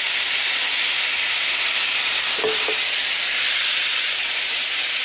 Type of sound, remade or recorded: recorded